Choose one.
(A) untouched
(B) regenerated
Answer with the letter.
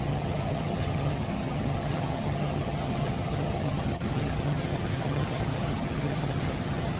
B